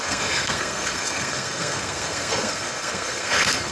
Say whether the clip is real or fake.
fake